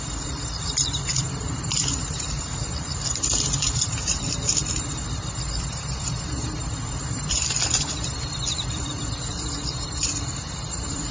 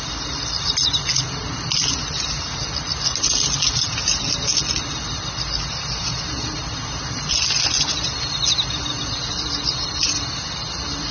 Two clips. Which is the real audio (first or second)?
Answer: second